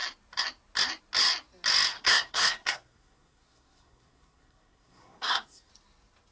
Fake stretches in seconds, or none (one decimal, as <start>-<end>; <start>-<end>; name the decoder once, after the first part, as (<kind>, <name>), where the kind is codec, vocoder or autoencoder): 1.9-5.7 (codec, SNAC)